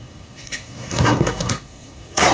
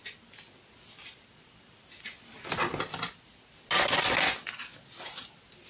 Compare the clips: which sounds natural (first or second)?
second